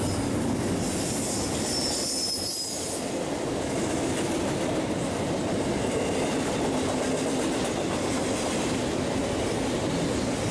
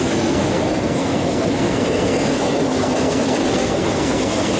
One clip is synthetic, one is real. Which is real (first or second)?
first